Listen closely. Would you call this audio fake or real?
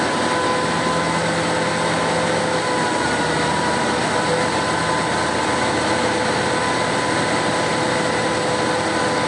real